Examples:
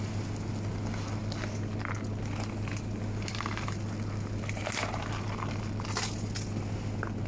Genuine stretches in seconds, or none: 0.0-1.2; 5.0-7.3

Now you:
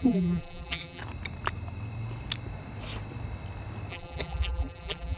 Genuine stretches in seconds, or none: 1.0-3.9

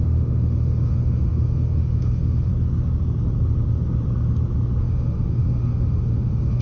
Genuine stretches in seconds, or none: 2.5-4.8